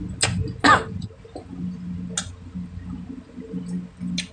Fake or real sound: real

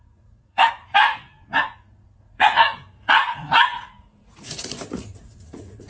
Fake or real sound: fake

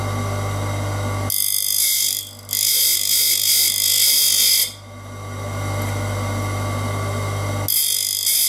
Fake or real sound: real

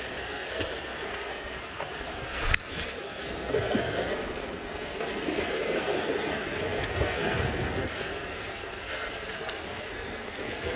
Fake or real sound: fake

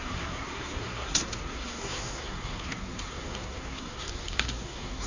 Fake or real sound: fake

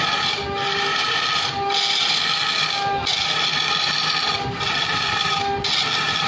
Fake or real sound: real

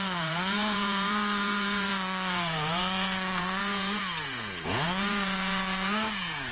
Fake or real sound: fake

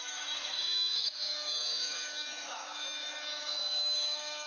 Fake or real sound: fake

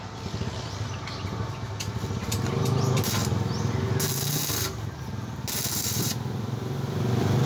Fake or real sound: real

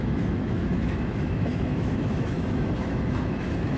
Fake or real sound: fake